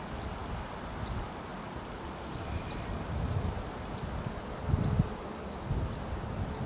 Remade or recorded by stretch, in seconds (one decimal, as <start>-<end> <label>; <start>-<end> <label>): 0.0-6.7 recorded